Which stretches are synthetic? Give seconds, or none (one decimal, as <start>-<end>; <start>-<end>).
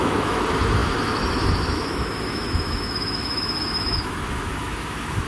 0.0-5.3